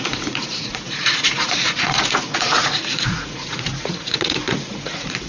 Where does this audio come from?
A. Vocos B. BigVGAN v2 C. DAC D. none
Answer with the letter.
A